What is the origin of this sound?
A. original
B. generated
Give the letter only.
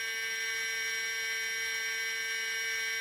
A